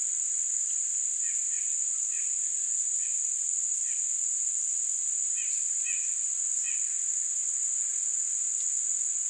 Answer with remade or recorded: recorded